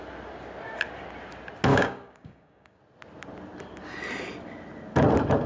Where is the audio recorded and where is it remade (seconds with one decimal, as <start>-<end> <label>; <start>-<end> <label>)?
0.0-1.7 recorded; 1.7-2.8 remade; 2.8-5.5 recorded